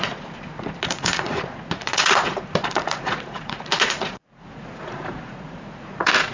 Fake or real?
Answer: fake